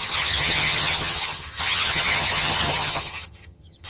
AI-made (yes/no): yes